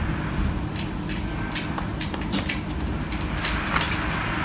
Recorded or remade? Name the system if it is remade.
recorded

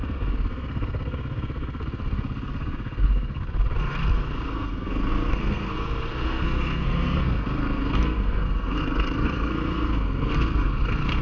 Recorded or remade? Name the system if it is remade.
remade, codec, SNAC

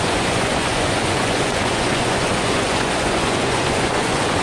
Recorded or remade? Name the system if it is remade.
remade, vocoder, Vocos